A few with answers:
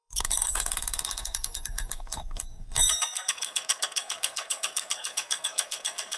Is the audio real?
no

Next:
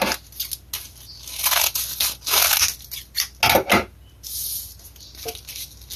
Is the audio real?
yes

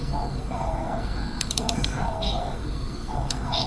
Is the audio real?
no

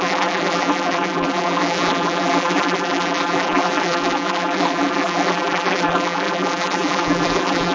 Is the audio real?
no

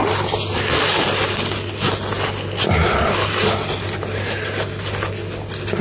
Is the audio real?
yes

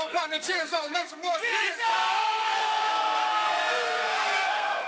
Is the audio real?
no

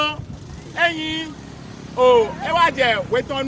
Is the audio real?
yes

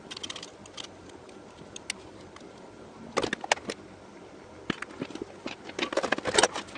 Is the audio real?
yes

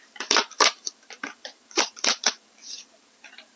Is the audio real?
no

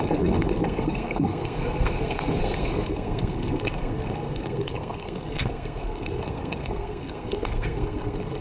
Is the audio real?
no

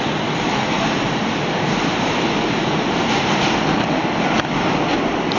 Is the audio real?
no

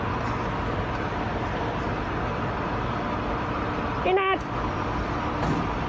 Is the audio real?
yes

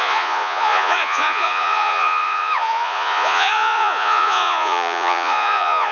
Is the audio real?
no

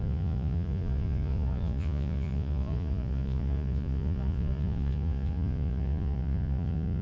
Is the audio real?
no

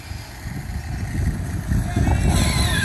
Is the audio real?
yes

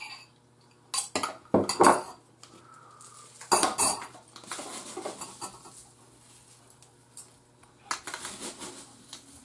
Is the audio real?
yes